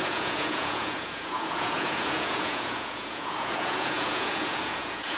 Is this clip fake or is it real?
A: fake